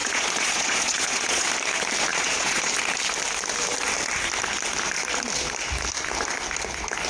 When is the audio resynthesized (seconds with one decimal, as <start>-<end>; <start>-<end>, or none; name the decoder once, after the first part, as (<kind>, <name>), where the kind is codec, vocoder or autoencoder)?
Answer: 0.0-1.5 (vocoder, Vocos); 2.1-2.7